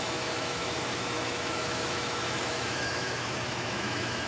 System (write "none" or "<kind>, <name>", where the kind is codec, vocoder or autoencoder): autoencoder, DAC-VAE